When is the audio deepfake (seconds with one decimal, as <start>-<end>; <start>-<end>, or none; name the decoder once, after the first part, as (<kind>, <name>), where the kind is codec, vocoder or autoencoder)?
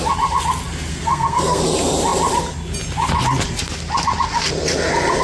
0.9-1.6 (codec, SNAC)